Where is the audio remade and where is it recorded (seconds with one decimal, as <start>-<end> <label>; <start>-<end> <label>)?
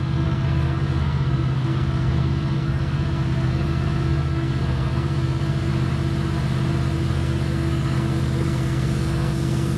0.0-5.7 remade; 5.7-7.1 recorded; 7.1-9.8 remade